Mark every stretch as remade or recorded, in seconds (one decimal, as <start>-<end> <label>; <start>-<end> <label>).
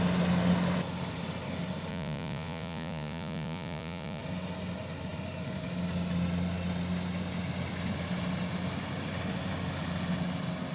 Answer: 0.0-1.9 recorded; 1.9-4.2 remade; 4.2-10.7 recorded